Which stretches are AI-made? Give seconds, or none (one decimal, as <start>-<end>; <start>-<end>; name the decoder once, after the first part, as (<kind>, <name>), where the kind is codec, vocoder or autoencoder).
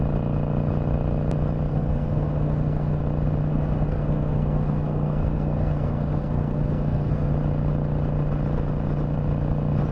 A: 1.7-3.0 (codec, SNAC); 3.5-7.3